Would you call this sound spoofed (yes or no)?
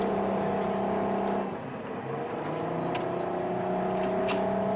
no